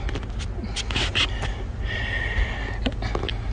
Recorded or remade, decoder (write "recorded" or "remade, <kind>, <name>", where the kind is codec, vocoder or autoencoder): recorded